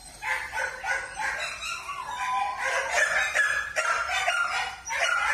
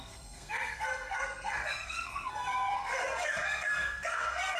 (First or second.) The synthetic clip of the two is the second